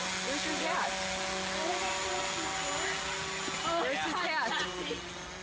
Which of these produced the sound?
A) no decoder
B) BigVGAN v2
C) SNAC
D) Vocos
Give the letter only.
A